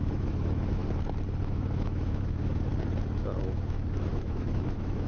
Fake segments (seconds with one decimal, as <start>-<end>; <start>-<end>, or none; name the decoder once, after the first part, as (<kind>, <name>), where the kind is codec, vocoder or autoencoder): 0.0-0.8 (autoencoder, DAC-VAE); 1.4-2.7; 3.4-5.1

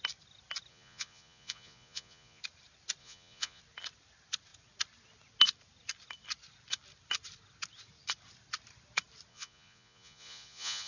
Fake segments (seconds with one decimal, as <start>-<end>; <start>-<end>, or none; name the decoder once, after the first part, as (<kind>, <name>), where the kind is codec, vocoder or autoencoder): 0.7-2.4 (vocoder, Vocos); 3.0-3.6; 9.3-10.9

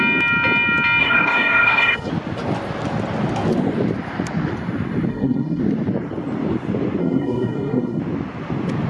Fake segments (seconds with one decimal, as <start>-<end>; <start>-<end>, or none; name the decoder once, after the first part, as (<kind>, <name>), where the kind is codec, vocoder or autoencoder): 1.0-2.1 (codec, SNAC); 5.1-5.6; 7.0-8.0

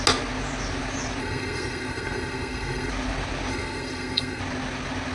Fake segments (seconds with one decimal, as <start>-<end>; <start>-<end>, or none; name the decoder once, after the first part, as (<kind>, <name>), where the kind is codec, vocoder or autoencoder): 1.2-2.9 (codec, SNAC); 3.5-4.4

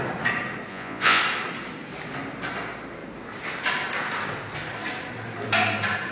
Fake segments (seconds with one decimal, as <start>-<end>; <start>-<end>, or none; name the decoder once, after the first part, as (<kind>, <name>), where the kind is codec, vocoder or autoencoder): 0.7-1.2 (vocoder, Vocos)

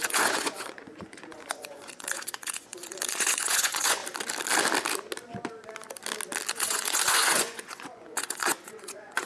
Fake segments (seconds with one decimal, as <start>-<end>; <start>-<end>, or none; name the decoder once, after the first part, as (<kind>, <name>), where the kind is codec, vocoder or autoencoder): 0.0-4.0 (vocoder, Vocos); 6.5-9.3

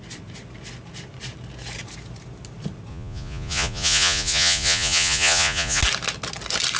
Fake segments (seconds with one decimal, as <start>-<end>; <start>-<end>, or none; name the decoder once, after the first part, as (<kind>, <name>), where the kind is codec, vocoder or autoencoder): 2.9-5.8 (vocoder, Vocos)

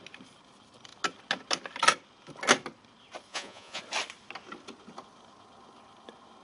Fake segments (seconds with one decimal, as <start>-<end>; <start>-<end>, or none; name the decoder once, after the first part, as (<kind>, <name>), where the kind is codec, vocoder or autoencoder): 3.3-3.8 (vocoder, Vocos)